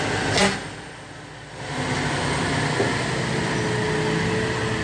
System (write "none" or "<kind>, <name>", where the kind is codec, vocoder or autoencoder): none